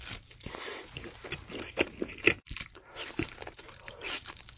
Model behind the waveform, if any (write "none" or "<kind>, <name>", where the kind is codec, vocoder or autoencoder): vocoder, BigVGAN v2